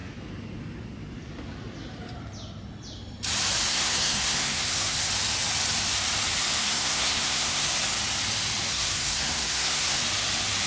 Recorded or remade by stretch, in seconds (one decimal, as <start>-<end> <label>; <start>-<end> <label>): 0.0-3.7 recorded; 3.7-5.1 remade; 5.1-6.6 recorded; 6.6-7.7 remade; 7.7-8.7 recorded; 8.7-10.0 remade; 10.0-10.7 recorded